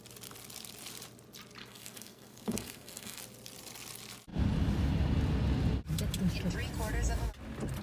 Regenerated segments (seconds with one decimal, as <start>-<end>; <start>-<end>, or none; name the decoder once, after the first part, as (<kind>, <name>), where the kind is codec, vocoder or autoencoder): 1.6-3.2 (codec, SNAC)